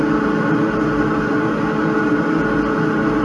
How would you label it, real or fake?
real